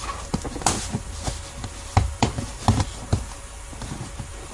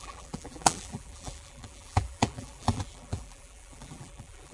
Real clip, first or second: first